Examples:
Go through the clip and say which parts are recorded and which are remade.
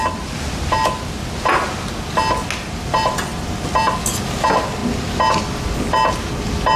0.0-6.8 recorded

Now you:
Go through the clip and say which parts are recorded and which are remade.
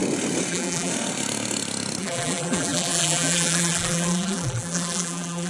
0.0-0.5 recorded; 0.5-0.9 remade; 0.9-2.0 recorded; 2.0-5.5 remade